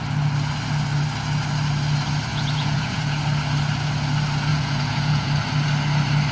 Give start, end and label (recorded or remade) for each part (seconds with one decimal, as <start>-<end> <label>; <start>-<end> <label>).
0.0-2.3 recorded; 2.3-3.2 remade; 3.2-4.5 recorded; 4.5-5.3 remade; 5.3-6.3 recorded